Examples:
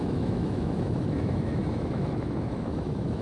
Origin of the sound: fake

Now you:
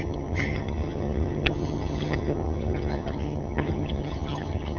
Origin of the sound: fake